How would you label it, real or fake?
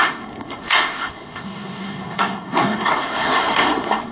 fake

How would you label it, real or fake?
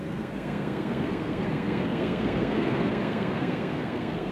fake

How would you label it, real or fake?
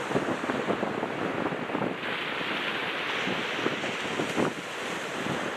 real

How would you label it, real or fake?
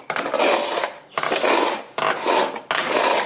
real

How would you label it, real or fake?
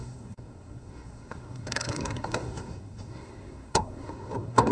fake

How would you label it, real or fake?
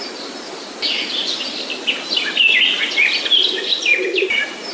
real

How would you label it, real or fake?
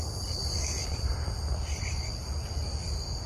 real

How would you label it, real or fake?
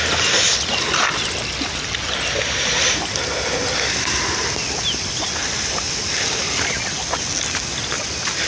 real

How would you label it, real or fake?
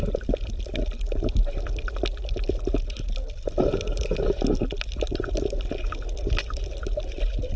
real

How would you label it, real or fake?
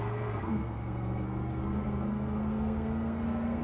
fake